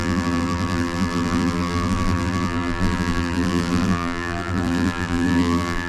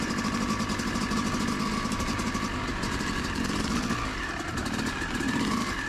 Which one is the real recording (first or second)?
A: second